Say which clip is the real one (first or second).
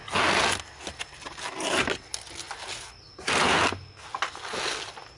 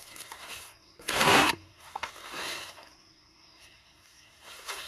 first